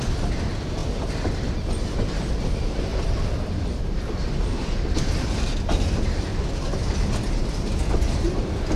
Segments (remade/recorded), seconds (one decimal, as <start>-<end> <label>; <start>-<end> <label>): 0.0-0.8 recorded; 0.8-1.8 remade; 1.8-2.9 recorded; 2.9-5.5 remade; 5.5-8.8 recorded